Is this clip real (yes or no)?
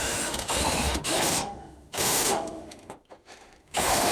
no